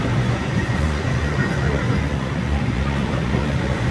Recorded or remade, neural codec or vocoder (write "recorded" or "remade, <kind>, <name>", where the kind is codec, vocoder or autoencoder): remade, vocoder, Vocos